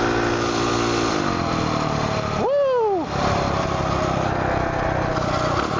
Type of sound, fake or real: real